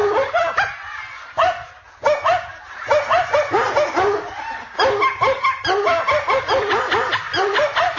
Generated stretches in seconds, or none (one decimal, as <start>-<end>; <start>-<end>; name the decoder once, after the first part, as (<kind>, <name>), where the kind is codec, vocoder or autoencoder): 0.0-2.0 (vocoder, BigVGAN v2); 6.4-8.0